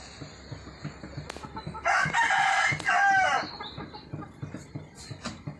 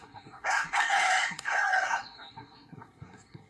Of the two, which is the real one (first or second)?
first